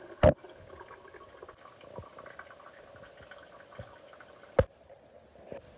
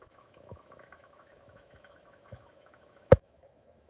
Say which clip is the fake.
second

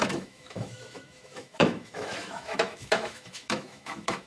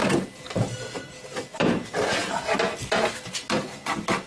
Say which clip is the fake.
first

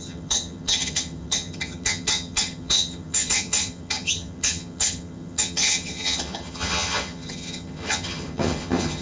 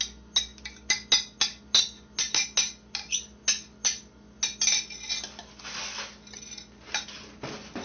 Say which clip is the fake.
first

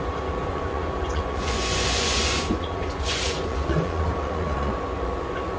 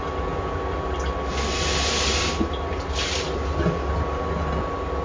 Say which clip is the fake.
first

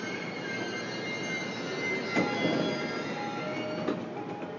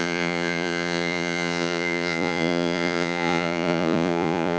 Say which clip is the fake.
second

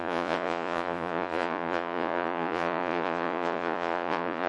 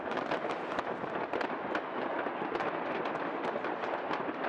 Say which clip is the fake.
first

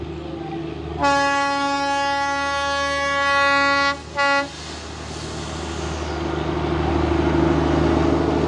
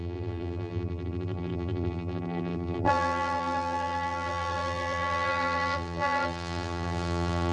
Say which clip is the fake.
second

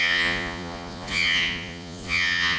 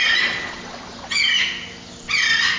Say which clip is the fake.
first